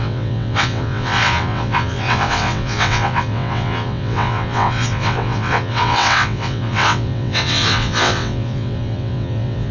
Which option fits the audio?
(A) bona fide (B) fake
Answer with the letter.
B